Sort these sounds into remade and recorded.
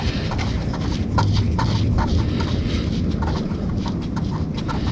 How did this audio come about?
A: recorded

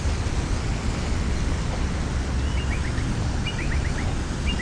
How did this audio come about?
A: recorded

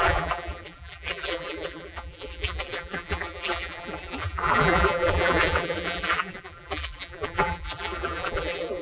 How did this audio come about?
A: remade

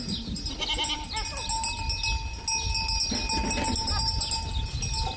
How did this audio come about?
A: recorded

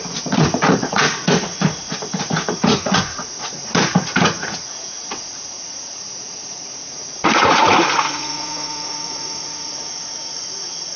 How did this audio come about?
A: remade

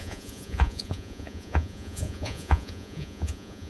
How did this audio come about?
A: remade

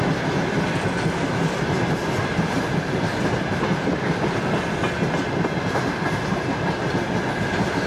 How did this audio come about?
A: recorded